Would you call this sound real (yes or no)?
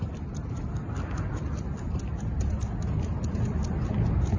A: yes